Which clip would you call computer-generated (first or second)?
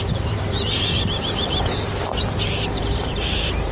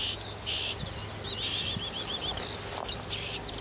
first